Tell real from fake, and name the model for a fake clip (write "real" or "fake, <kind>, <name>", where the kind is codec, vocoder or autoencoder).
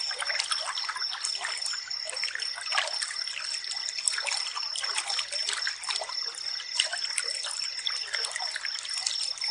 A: real